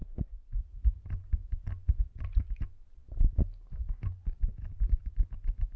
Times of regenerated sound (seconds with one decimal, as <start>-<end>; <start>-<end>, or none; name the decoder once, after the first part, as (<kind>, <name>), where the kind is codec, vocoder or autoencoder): 0.0-0.6 (vocoder, Vocos)